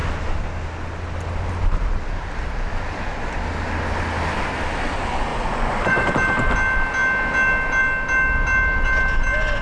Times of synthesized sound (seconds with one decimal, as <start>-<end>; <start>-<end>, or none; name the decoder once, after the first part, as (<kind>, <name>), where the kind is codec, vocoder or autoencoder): 5.3-6.1 (vocoder, Vocos)